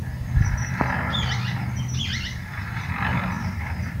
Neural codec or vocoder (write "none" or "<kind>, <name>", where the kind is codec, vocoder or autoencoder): vocoder, BigVGAN v2